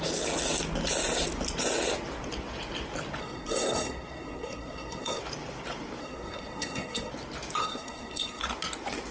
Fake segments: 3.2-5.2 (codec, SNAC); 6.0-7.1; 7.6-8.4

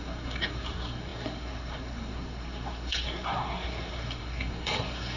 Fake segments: 0.0-5.2 (codec, SNAC)

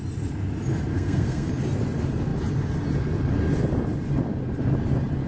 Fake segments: 0.9-1.5 (codec, SNAC)

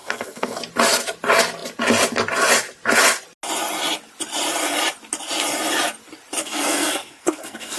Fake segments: 0.0-0.6 (codec, SNAC); 6.4-7.8

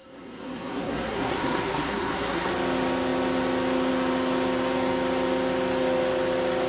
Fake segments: 0.0-2.5 (codec, SNAC)

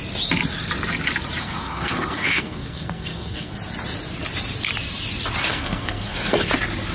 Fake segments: 1.4-3.5 (codec, SNAC); 5.5-6.5